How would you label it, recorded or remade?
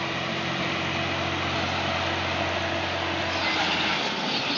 recorded